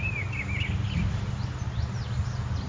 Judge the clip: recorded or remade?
recorded